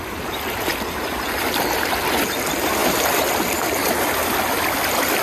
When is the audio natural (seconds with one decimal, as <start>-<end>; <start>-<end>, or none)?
0.0-5.2